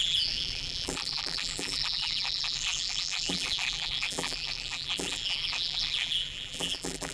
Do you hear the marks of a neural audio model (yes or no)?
yes